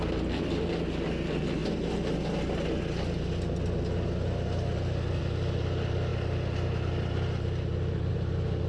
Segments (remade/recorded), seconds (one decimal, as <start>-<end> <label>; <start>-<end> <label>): 0.0-8.7 recorded